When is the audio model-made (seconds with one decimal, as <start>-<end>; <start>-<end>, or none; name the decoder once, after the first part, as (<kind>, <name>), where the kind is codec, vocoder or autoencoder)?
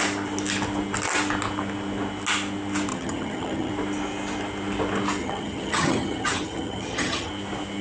2.9-3.7 (vocoder, HiFi-GAN); 5.2-7.3